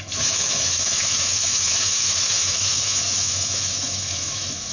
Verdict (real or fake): fake